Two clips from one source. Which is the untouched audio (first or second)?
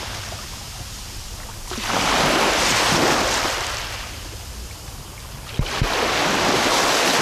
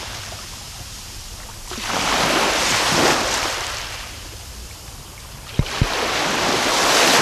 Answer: first